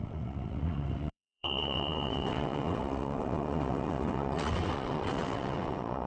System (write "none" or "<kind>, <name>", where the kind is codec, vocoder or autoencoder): vocoder, WaveNeXt